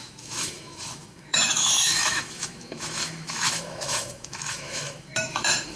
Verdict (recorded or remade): remade